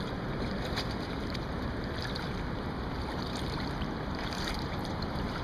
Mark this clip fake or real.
fake